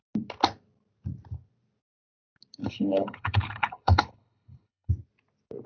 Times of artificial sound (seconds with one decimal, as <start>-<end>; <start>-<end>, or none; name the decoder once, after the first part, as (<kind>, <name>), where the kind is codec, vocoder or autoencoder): 2.6-4.9 (codec, HILCodec)